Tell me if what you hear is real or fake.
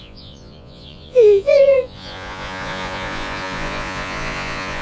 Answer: fake